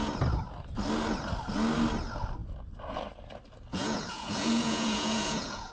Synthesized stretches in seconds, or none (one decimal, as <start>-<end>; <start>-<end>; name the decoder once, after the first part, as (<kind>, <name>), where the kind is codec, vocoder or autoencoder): 3.7-5.7 (vocoder, Vocos)